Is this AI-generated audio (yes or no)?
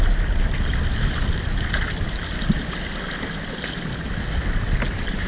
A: no